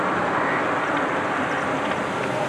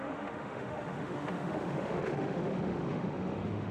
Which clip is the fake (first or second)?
second